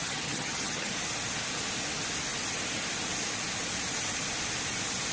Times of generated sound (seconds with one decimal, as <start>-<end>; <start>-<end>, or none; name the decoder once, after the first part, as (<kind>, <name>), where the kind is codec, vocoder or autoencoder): 0.0-0.9 (vocoder, HiFi-GAN)

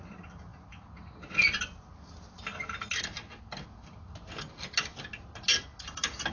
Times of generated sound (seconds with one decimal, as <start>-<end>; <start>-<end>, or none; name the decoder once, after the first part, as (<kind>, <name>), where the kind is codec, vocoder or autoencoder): none

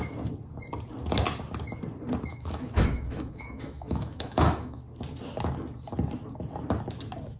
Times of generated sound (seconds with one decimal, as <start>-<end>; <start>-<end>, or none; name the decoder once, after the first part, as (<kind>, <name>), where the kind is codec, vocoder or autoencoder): 2.3-4.8 (autoencoder, DAC-VAE)

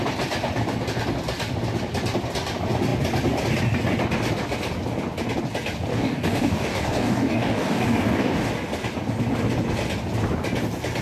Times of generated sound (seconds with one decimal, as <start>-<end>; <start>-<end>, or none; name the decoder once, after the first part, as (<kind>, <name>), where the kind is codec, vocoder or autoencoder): 5.9-8.5 (codec, DAC)

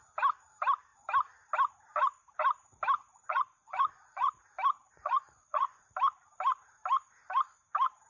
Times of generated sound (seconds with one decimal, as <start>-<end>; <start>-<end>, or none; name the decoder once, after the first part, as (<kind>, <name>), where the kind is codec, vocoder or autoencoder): 3.0-4.3 (vocoder, Vocos); 4.8-5.9

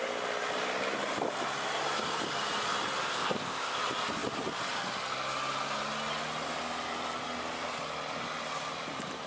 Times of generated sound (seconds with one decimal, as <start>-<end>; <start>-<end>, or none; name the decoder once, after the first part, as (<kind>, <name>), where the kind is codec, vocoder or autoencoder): 3.1-3.8 (codec, ZipCodec)